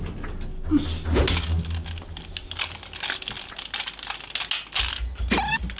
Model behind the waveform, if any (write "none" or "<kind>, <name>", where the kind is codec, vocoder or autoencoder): none